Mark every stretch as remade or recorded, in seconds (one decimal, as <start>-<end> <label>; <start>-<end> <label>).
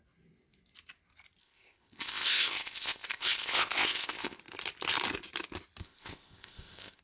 0.0-1.4 recorded; 1.4-4.4 remade; 4.4-5.8 recorded; 5.8-7.0 remade